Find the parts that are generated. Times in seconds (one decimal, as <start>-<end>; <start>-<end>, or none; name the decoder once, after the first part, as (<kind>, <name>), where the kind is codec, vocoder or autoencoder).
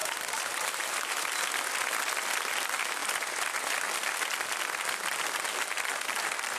0.0-1.2 (vocoder, BigVGAN v2)